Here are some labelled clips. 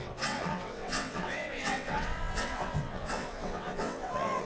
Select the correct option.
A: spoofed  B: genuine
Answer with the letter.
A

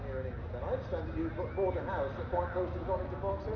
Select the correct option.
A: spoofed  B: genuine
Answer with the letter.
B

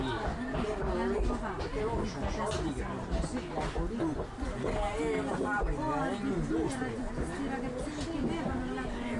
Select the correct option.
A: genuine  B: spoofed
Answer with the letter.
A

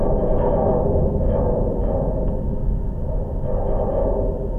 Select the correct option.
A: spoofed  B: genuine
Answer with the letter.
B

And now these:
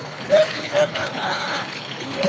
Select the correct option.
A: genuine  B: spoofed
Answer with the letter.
B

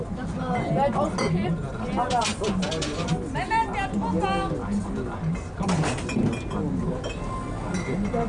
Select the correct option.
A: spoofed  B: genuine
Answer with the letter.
B